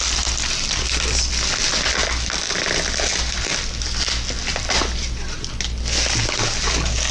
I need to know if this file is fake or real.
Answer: real